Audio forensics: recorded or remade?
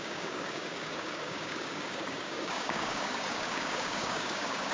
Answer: remade